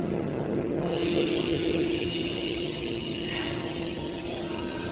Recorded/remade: remade